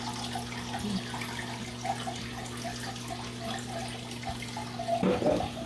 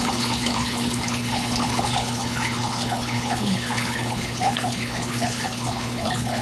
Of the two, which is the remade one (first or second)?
second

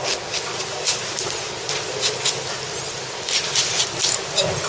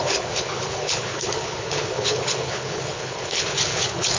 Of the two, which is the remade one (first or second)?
second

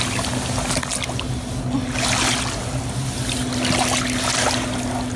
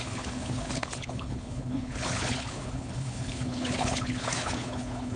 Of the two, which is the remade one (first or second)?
second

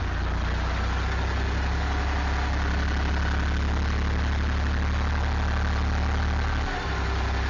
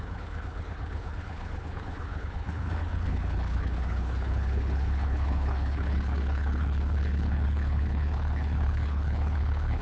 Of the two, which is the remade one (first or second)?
second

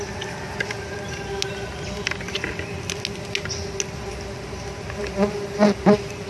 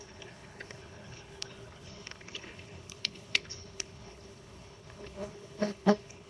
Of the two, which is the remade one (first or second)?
second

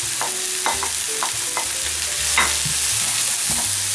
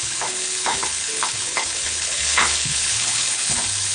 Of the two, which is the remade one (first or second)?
second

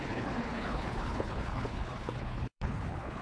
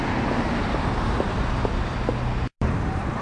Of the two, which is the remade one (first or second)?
first